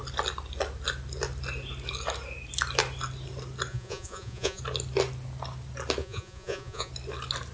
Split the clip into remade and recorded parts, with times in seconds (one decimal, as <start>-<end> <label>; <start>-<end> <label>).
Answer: 0.0-3.7 recorded; 3.7-4.6 remade; 4.6-6.0 recorded; 6.0-6.9 remade; 6.9-7.5 recorded